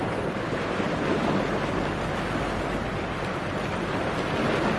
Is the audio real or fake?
real